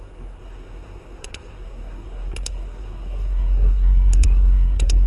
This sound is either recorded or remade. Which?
remade